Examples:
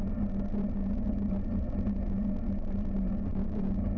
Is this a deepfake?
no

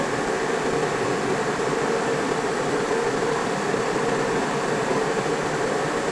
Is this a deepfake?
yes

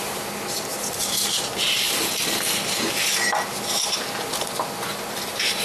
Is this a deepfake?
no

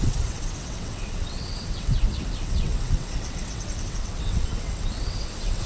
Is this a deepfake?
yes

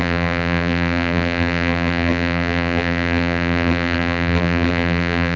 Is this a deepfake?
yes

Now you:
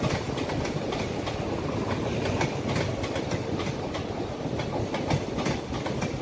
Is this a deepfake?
no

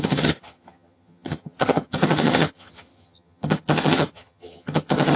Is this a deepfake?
yes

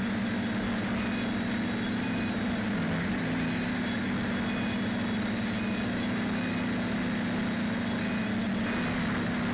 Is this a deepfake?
no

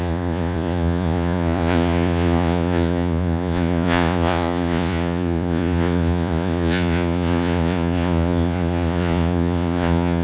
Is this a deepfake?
yes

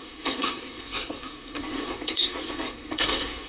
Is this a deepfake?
yes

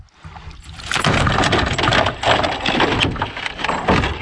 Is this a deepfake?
no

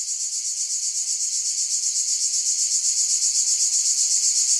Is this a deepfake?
no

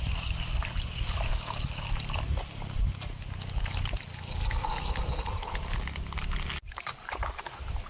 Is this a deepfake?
no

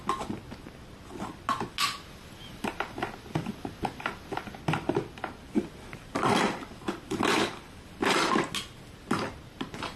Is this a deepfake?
no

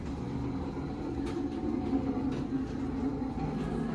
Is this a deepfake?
no